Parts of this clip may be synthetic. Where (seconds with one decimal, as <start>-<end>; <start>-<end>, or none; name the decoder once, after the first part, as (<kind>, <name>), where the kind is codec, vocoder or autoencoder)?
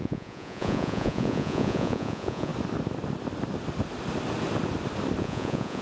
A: 0.0-2.5 (vocoder, Vocos); 5.2-5.8